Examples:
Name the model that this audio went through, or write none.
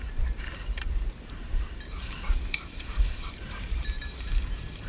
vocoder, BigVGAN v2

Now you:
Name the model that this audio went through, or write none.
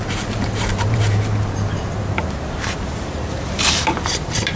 vocoder, BigVGAN v2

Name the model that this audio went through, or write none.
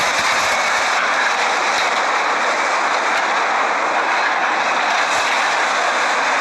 none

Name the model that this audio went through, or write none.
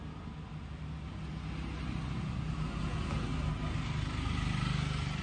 none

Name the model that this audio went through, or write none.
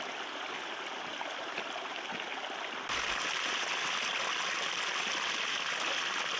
none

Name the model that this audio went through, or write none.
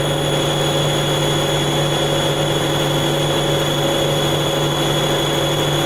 none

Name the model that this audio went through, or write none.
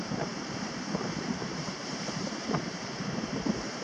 vocoder, BigVGAN v2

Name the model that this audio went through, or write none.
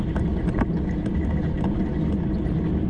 none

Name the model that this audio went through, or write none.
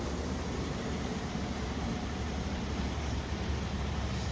vocoder, BigVGAN v2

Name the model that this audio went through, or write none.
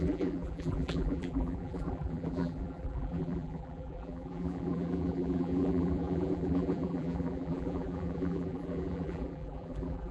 vocoder, BigVGAN v2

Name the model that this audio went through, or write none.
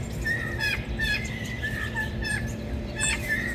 vocoder, BigVGAN v2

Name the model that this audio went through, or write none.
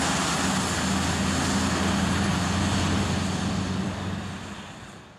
none